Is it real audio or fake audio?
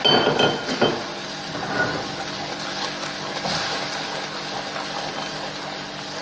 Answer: real